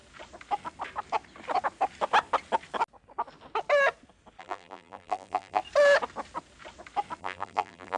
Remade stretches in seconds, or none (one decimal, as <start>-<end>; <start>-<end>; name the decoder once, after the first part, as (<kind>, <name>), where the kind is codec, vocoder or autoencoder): 4.4-5.6 (vocoder, BigVGAN v2); 7.2-8.0